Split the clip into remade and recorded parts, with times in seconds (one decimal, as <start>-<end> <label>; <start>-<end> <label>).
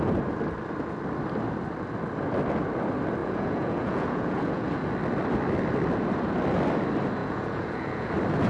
0.0-3.2 recorded; 3.2-4.7 remade; 4.7-7.2 recorded; 7.2-8.1 remade; 8.1-8.5 recorded